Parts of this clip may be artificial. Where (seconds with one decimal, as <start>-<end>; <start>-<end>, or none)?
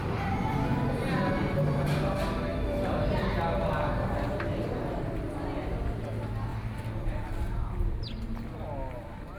0.0-0.6; 2.5-3.3; 6.5-7.3